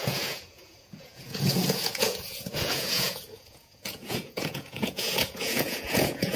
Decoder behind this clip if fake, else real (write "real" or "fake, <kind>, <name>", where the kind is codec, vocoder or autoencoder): fake, vocoder, Vocos